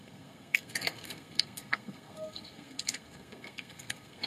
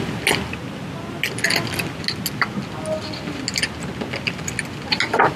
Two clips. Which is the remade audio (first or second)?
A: first